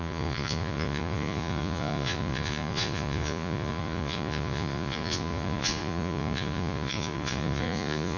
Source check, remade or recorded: remade